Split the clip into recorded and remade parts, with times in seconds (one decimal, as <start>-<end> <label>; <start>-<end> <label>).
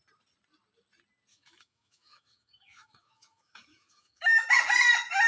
0.0-1.3 recorded; 1.3-4.5 remade; 4.5-5.3 recorded